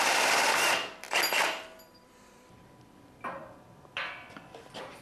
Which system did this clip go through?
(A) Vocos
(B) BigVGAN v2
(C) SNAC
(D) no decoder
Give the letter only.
B